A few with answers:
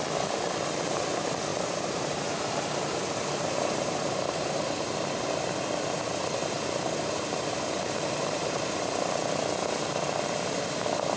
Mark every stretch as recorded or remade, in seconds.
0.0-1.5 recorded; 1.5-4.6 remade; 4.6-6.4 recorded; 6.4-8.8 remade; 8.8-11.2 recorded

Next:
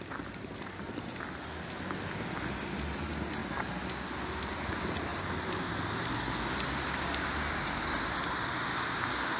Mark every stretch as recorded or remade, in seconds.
0.0-5.1 recorded; 5.1-6.1 remade; 6.1-9.4 recorded